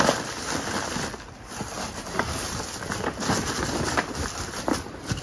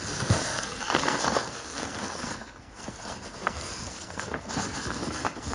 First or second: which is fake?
second